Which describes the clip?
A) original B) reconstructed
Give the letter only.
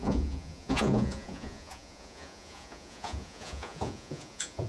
B